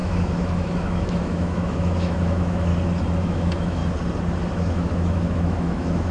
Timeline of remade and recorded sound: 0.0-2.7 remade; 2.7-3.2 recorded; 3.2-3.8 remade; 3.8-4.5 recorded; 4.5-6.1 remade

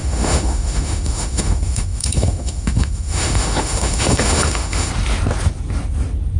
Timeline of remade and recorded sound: 0.0-4.9 remade; 4.9-6.4 recorded

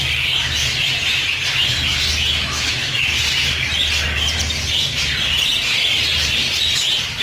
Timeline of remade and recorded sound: 0.0-2.3 recorded; 2.3-3.1 remade; 3.1-7.2 recorded

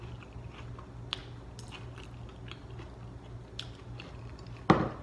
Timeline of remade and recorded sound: 0.0-5.0 recorded

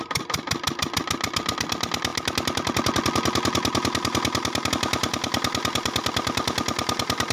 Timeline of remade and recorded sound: 0.0-7.3 recorded